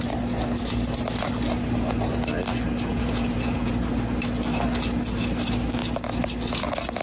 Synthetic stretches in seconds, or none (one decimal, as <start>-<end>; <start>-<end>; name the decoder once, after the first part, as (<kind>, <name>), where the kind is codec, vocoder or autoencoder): 2.9-3.7 (vocoder, Vocos)